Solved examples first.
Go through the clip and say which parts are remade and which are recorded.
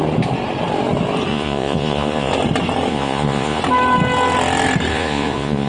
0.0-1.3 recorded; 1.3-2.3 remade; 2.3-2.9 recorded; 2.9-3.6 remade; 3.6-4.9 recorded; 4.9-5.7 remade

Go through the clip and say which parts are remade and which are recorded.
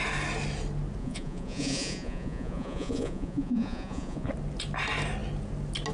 0.0-1.0 recorded; 1.0-4.3 remade; 4.3-5.9 recorded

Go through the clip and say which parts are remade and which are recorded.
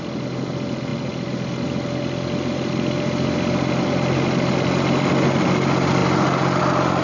0.0-7.0 recorded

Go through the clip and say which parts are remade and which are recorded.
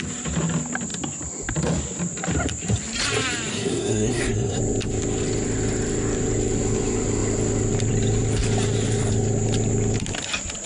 0.0-3.5 recorded; 3.5-4.6 remade; 4.6-10.7 recorded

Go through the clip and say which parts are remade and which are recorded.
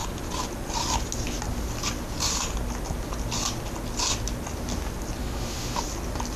0.0-5.2 recorded; 5.2-5.8 remade; 5.8-6.4 recorded